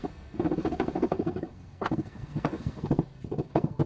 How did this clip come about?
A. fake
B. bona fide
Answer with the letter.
A